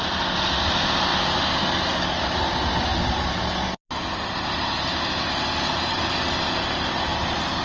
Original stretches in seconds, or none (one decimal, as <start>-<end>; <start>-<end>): 0.0-7.6